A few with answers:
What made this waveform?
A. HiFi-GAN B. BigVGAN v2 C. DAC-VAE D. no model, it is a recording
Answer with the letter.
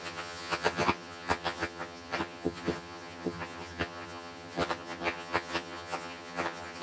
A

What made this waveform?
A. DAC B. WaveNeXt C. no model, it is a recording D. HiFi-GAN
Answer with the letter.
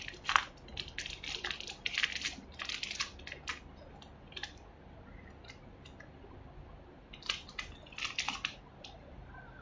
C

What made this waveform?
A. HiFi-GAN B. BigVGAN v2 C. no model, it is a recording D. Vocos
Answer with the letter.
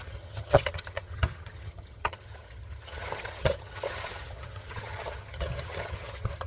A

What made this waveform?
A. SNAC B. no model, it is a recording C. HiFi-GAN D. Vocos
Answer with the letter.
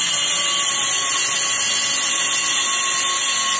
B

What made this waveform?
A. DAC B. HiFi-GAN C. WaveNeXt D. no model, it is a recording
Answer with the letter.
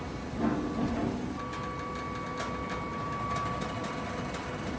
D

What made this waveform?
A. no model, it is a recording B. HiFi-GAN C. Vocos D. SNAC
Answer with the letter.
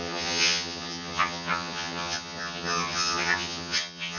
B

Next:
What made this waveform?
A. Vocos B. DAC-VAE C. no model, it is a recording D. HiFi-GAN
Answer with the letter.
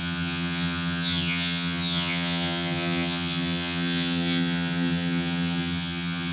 D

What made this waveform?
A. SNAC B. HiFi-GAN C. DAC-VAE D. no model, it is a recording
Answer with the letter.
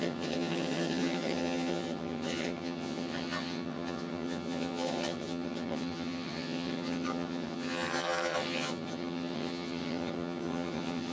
B